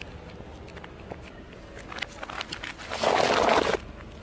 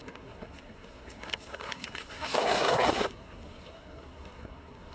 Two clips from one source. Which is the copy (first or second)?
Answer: second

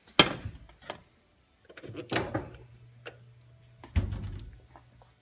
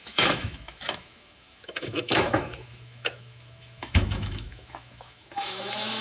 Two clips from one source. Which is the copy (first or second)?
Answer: second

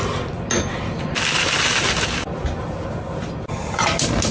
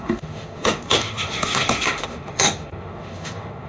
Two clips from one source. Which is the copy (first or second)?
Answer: second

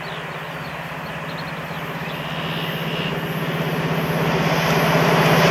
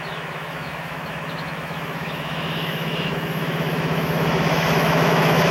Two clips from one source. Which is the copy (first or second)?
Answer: second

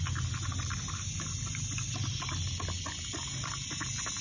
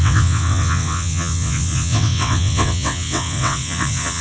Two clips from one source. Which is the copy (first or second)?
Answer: second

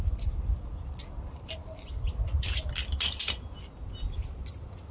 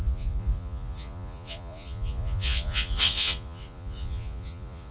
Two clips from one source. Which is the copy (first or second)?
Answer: second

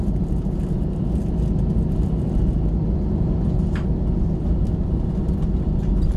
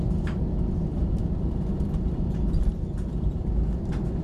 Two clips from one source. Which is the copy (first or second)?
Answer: second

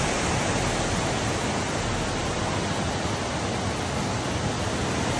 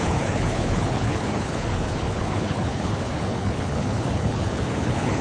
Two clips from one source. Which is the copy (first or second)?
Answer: second